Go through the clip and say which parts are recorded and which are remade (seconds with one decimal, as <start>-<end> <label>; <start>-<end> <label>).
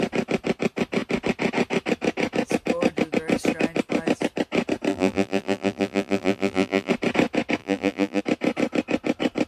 0.0-4.9 recorded; 4.9-6.9 remade; 6.9-7.6 recorded; 7.6-8.2 remade; 8.2-9.5 recorded